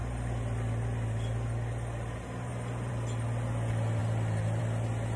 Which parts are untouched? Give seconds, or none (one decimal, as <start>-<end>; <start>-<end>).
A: 0.0-5.2